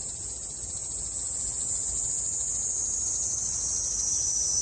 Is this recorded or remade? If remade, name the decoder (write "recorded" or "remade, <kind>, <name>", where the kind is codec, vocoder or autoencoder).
recorded